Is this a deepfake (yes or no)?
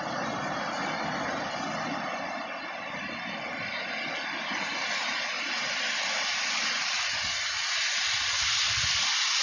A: no